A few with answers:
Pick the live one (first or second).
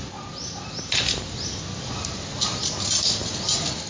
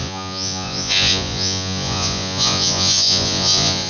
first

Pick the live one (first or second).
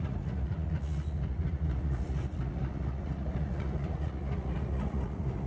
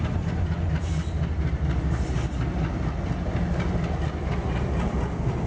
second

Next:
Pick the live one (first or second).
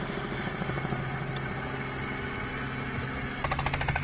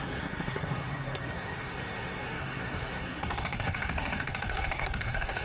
first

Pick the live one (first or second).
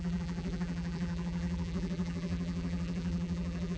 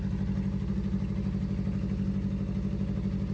second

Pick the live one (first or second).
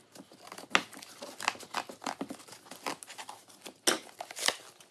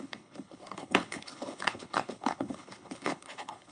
first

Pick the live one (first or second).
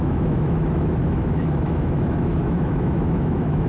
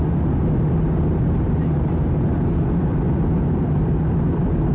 second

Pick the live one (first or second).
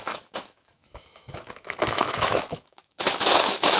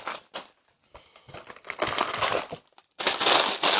second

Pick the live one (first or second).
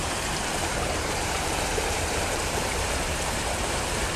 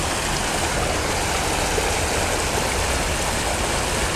second